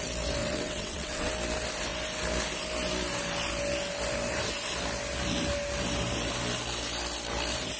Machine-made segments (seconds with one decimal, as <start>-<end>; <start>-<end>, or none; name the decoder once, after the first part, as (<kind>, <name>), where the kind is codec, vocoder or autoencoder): 0.4-1.3 (vocoder, WaveNeXt)